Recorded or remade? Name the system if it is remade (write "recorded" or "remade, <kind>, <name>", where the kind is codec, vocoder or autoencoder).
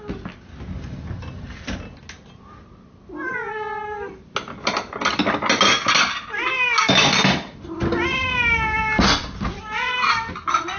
recorded